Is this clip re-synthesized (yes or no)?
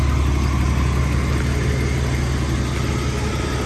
no